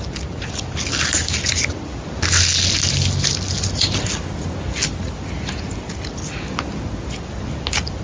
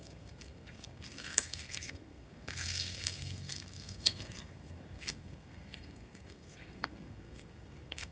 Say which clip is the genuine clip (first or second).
first